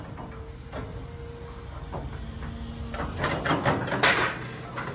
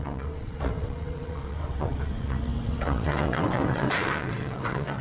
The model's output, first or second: second